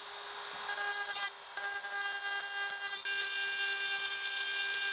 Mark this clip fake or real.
real